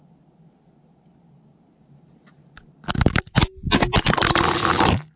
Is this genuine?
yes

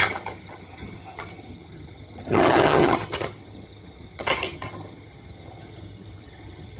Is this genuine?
no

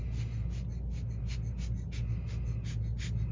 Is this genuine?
yes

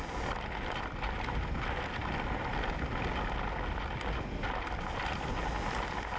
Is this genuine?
yes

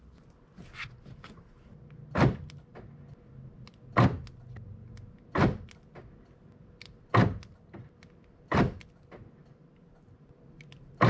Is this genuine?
yes